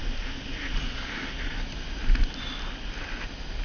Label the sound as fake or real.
real